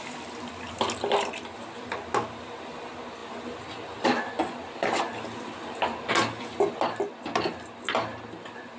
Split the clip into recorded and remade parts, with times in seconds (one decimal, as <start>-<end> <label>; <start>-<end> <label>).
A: 0.0-8.8 recorded